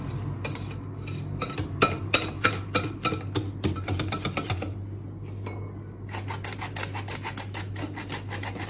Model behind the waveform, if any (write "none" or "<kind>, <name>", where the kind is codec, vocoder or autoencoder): none